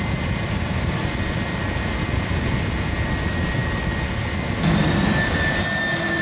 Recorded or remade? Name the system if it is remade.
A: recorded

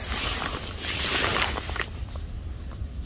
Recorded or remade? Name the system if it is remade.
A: recorded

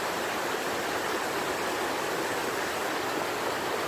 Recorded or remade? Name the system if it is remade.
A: recorded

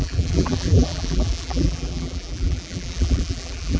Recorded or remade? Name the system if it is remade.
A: remade, vocoder, BigVGAN v2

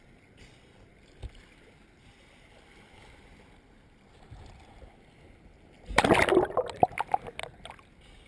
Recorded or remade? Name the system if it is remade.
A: recorded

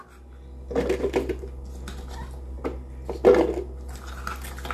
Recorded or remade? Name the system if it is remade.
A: recorded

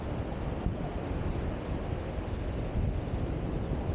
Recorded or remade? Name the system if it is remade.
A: recorded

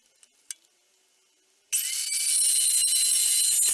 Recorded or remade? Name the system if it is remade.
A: recorded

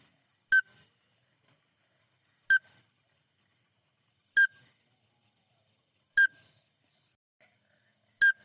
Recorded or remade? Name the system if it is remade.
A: recorded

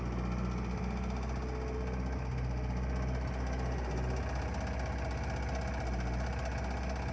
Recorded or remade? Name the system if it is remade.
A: recorded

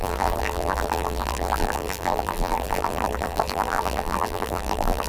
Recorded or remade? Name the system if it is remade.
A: remade, vocoder, BigVGAN v2